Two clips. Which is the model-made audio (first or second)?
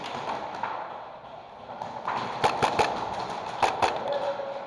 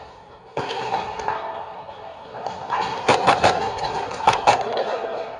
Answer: second